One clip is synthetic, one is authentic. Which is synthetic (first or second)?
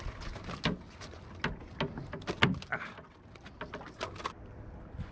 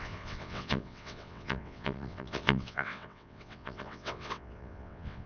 second